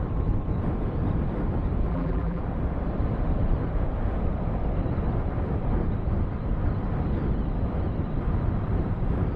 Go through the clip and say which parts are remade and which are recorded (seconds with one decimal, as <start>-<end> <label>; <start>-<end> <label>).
0.0-1.9 recorded; 1.9-2.4 remade; 2.4-9.4 recorded